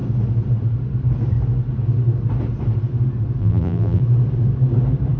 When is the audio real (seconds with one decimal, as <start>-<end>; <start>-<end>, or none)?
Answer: 0.0-3.4; 4.0-5.2